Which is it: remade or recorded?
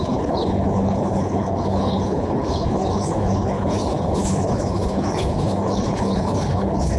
remade